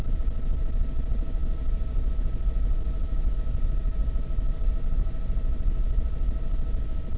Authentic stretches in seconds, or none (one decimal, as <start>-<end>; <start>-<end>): 0.0-7.2